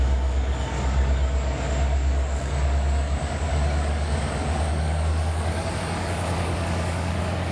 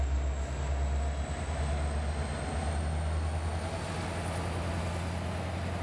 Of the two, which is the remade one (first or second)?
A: first